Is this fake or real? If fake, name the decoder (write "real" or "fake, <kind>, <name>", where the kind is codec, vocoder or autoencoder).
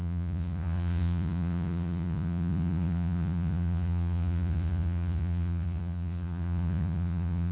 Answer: fake, vocoder, Vocos